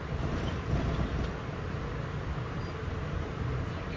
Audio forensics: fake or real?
real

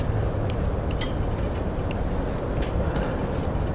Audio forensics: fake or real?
real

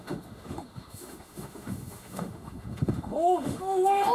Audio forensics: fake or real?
fake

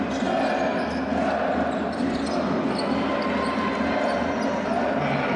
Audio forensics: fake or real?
real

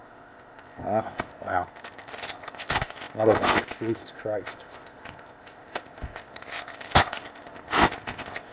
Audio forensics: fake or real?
fake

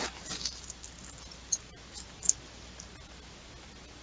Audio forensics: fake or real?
real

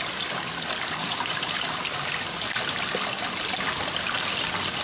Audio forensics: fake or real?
real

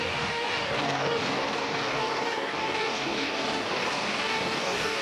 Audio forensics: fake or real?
fake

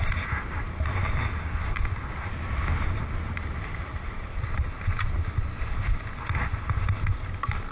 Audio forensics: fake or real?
real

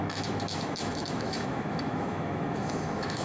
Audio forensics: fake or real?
fake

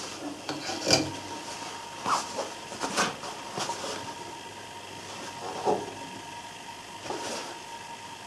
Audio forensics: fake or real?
real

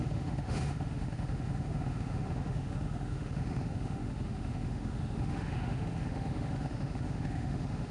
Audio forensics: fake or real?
fake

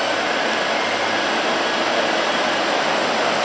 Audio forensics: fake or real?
real